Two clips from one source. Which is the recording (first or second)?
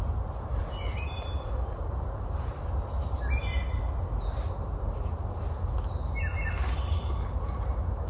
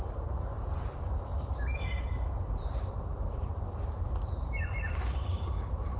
first